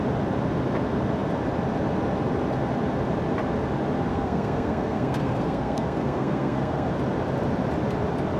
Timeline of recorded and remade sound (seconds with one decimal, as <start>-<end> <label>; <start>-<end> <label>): 0.0-4.1 recorded; 4.1-6.9 remade; 6.9-8.4 recorded